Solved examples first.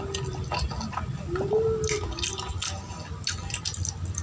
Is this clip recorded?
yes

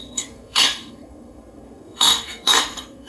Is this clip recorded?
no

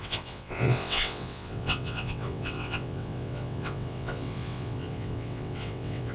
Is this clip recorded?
no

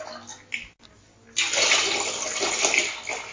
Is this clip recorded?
yes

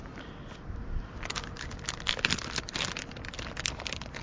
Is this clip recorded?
yes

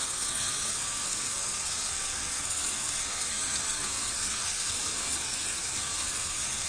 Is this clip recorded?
no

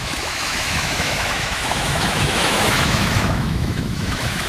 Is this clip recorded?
no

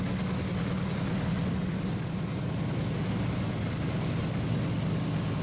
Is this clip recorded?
yes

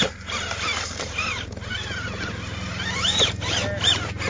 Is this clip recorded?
yes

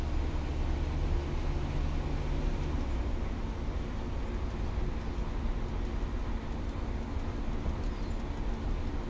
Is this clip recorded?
yes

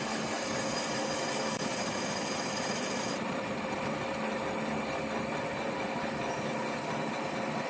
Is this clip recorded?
yes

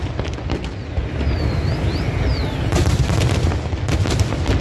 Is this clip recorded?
yes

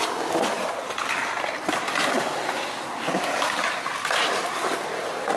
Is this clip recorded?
yes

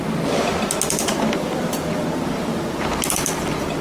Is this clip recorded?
yes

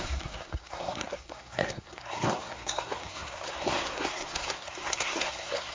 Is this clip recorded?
no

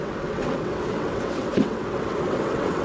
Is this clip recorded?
no